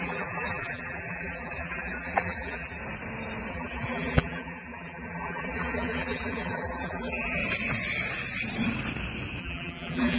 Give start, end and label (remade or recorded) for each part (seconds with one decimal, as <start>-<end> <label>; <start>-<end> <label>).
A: 0.0-2.8 remade; 2.8-3.5 recorded; 3.5-7.4 remade; 7.4-9.4 recorded; 9.4-10.2 remade